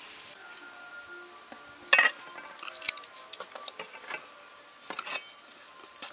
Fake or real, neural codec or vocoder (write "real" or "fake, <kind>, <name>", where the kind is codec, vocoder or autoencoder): real